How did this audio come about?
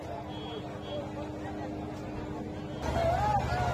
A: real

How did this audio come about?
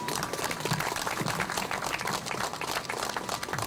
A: real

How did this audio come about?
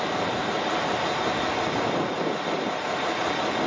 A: real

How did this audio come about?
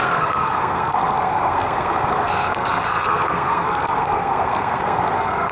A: fake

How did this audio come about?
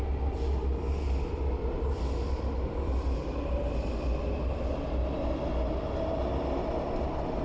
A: real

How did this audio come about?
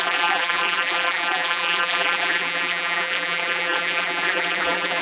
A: fake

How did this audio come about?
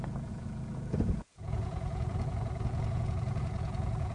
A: fake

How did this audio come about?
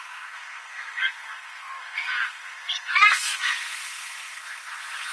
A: fake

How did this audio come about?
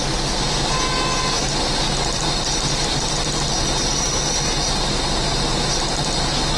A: real